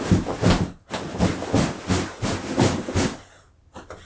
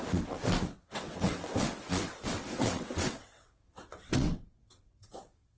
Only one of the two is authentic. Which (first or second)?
first